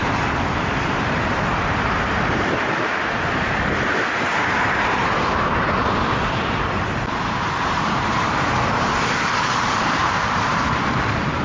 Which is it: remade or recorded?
remade